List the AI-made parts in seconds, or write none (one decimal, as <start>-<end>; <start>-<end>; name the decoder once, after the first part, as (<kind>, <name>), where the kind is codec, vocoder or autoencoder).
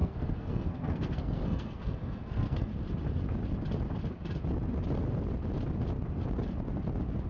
0.0-2.7 (codec, SNAC)